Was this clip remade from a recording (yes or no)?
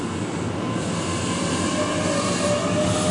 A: no